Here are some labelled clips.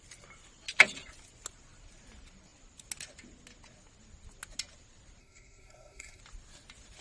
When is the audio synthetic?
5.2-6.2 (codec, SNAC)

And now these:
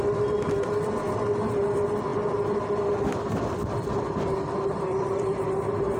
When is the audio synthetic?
none

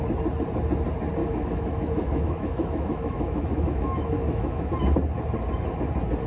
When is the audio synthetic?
1.2-4.7 (autoencoder, DAC-VAE)